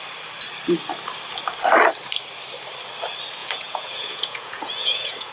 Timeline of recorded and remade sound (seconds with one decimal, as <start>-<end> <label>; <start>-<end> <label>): 0.0-3.4 recorded; 3.4-5.3 remade